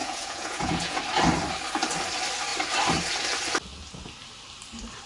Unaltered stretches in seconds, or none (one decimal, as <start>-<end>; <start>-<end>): 1.0-5.1